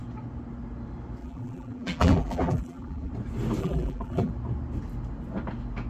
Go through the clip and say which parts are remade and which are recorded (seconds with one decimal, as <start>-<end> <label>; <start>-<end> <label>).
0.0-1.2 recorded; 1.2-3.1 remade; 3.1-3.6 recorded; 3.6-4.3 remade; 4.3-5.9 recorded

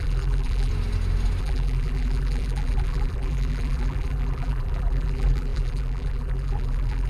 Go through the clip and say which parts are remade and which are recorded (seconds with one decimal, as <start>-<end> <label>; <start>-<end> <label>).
0.0-0.7 remade; 0.7-1.4 recorded; 1.4-7.1 remade

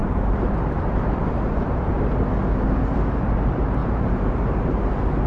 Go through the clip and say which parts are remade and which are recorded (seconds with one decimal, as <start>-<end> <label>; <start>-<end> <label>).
0.0-1.9 remade; 1.9-3.8 recorded; 3.8-4.3 remade; 4.3-5.3 recorded

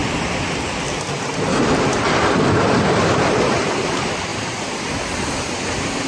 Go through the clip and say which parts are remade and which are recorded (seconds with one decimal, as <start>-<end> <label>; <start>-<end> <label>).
0.0-6.1 remade

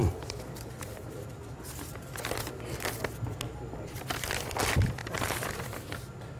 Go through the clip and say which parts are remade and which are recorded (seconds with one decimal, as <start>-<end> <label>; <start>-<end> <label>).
0.0-2.2 remade; 2.2-5.0 recorded; 5.0-5.5 remade; 5.5-6.4 recorded

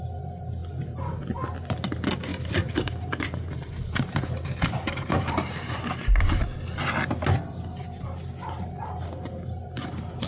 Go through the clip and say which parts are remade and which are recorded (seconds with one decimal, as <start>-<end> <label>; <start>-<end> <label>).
0.0-2.3 recorded; 2.3-5.8 remade; 5.8-10.3 recorded